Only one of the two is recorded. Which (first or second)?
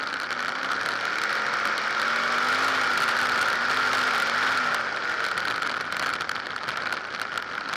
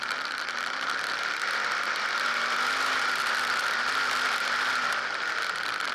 first